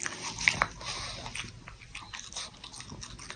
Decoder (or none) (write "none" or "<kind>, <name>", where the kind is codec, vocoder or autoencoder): none